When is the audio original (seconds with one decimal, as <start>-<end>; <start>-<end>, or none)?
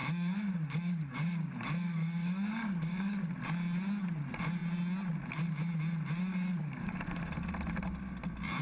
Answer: 3.3-6.6; 7.3-8.6